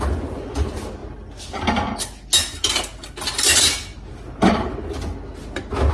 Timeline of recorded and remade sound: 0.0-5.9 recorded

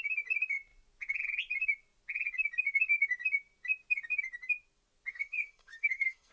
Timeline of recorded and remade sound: 0.0-5.1 recorded; 5.1-6.3 remade

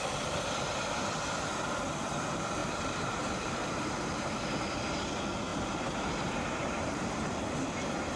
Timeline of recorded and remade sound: 0.0-2.6 recorded; 2.6-4.4 remade; 4.4-5.5 recorded; 5.5-7.1 remade; 7.1-8.2 recorded

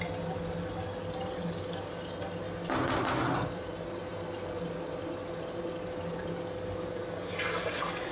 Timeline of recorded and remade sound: 0.0-8.1 recorded

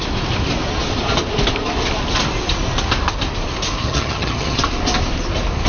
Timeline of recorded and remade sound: 0.0-3.8 recorded; 3.8-4.6 remade; 4.6-5.7 recorded

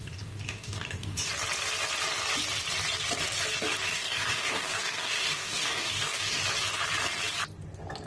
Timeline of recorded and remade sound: 0.0-1.3 remade; 1.3-3.9 recorded; 3.9-6.4 remade; 6.4-8.1 recorded